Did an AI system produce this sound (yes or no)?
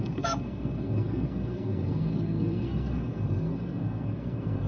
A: yes